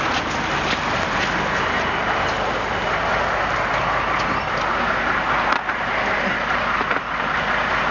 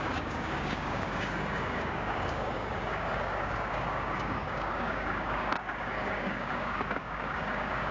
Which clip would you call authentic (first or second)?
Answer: first